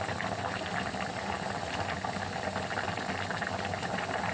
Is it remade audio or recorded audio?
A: recorded